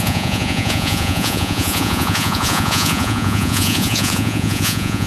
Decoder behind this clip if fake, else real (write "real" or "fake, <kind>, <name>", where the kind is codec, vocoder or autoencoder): fake, vocoder, Vocos